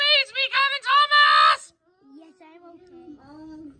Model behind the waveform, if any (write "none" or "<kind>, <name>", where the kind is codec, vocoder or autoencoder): none